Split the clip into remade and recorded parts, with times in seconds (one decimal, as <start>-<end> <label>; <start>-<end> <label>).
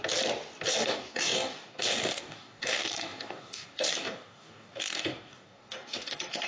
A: 0.0-0.7 recorded; 0.7-6.5 remade